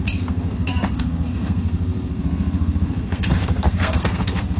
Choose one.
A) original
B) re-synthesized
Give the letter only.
B